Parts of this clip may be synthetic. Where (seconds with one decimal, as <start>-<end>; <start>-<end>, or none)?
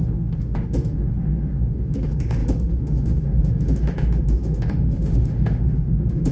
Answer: 0.0-6.3